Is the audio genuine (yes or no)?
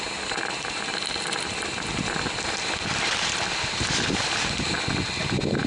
yes